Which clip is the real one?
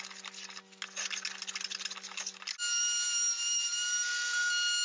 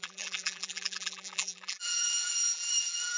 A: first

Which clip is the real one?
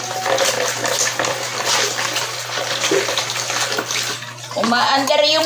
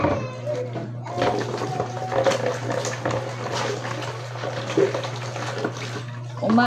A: second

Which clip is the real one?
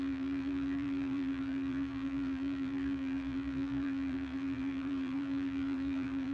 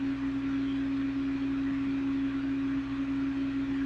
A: second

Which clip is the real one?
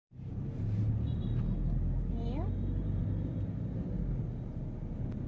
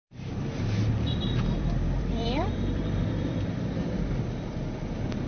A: first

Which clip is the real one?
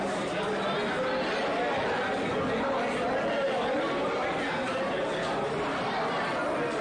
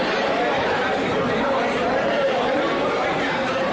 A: first